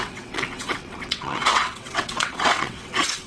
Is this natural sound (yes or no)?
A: no